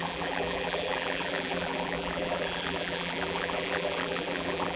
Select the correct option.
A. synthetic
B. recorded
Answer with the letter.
A